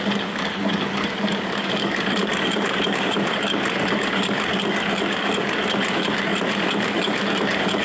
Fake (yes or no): yes